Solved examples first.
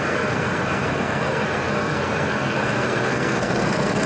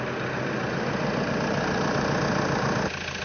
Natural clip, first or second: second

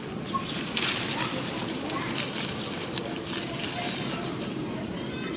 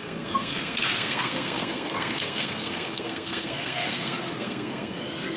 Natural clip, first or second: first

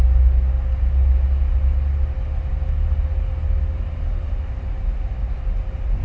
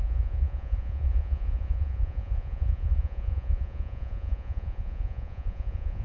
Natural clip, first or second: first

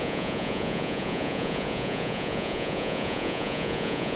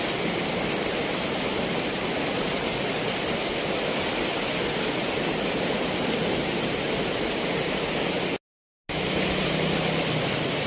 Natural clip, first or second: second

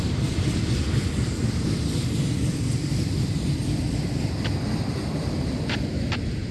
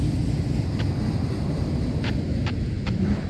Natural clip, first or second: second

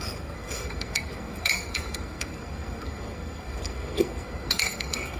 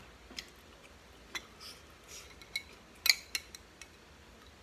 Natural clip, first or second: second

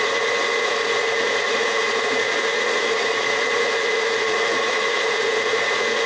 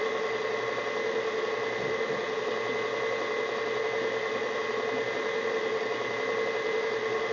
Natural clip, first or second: second